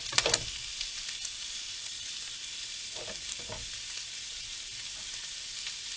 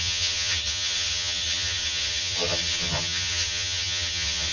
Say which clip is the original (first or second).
first